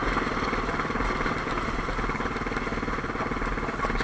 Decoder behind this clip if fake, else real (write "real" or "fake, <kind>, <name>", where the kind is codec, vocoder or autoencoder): real